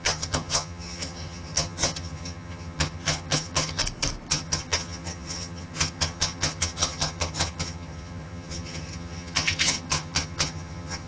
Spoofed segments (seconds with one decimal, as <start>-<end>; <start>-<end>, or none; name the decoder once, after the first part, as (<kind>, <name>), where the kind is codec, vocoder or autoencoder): 0.0-3.8 (vocoder, HiFi-GAN); 4.3-11.1